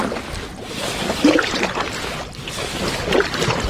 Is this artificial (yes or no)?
no